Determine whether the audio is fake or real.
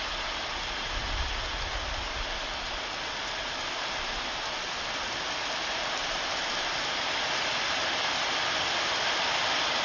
real